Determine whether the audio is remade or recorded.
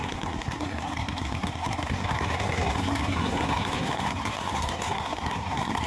remade